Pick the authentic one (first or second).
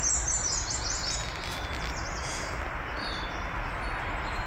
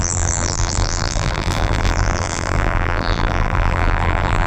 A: first